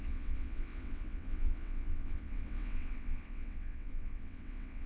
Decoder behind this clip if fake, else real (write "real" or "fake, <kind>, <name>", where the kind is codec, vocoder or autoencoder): fake, vocoder, WaveNeXt